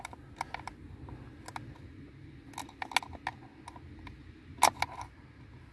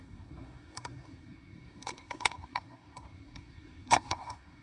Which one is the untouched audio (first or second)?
first